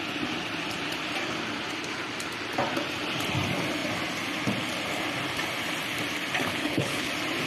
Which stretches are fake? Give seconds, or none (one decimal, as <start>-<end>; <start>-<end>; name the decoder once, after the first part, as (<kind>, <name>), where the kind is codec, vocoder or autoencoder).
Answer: 6.5-7.1 (codec, HILCodec)

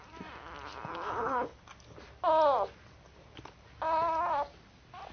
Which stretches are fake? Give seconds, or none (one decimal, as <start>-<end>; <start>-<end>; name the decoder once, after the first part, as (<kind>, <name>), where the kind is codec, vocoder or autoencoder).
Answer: 0.9-1.6 (codec, HILCodec)

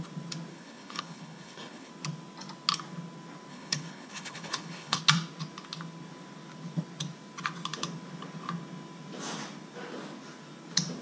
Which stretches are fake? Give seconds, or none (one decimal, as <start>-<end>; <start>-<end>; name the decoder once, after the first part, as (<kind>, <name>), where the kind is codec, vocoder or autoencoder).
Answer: 0.5-1.9 (codec, HILCodec); 3.5-5.0

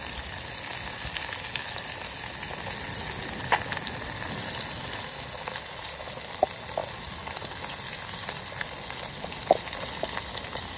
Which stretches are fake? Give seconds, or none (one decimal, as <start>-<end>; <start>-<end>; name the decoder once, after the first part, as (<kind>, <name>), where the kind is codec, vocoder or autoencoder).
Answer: none

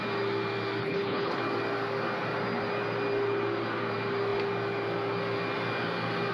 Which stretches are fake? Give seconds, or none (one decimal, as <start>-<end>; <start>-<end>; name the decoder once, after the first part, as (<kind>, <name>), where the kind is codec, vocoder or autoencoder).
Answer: 0.8-1.4 (codec, HILCodec)

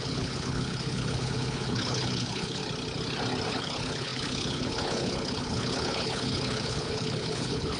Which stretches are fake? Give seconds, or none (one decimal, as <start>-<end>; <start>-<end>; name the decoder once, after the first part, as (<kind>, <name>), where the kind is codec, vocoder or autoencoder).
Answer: 0.0-2.6 (codec, HILCodec); 3.5-7.8

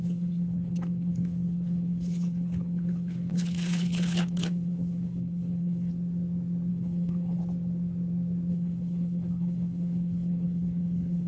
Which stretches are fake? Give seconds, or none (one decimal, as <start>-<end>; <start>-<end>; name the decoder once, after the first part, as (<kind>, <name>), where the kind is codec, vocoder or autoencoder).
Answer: 0.0-5.9 (codec, HILCodec); 6.7-7.4; 8.5-11.3

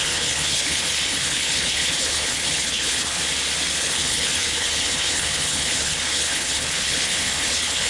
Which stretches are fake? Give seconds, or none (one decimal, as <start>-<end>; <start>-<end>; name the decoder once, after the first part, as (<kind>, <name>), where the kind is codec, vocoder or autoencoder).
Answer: 0.0-3.2 (codec, HILCodec); 3.8-7.9